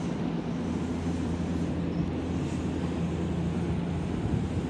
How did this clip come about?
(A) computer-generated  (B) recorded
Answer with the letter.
B